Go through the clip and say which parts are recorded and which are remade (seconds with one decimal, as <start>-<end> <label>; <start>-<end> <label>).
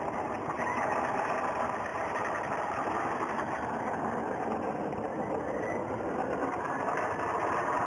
0.0-7.9 remade